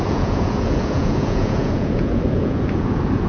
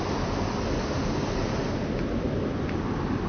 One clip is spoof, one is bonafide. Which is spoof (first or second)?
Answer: first